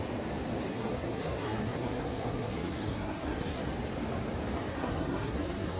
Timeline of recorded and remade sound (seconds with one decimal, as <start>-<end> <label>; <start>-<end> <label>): 0.0-0.7 recorded; 0.7-3.6 remade; 3.6-4.7 recorded; 4.7-5.8 remade